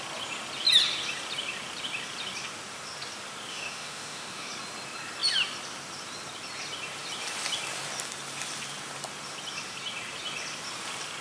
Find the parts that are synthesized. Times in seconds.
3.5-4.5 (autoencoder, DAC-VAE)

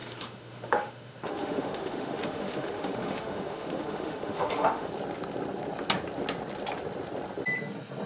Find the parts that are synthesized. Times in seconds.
0.0-4.9 (autoencoder, DAC-VAE)

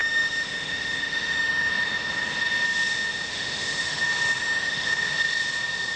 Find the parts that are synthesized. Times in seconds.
0.0-1.7 (autoencoder, DAC-VAE); 3.3-4.0; 4.4-4.9

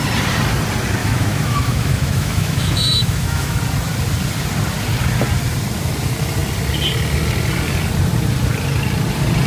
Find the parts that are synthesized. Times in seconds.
1.0-3.6 (autoencoder, DAC-VAE)